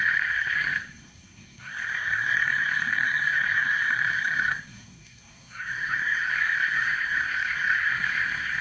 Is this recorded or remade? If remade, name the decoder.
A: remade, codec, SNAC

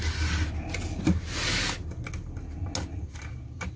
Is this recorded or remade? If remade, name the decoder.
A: recorded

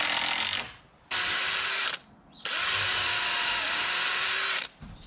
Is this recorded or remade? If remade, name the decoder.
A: recorded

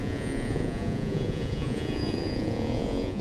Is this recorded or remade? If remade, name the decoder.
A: remade, vocoder, Vocos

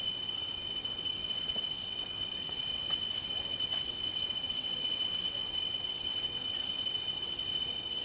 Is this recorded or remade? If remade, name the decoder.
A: remade, vocoder, WaveNeXt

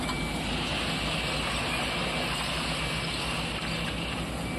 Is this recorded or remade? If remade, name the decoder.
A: recorded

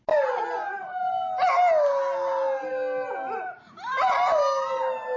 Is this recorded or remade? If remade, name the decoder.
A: recorded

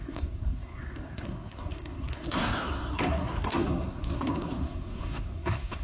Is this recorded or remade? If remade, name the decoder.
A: remade, codec, SNAC